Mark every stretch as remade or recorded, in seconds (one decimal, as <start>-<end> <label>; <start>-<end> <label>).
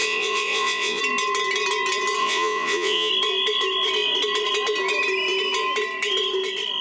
0.0-1.0 remade; 1.0-2.2 recorded; 2.2-3.1 remade; 3.1-6.8 recorded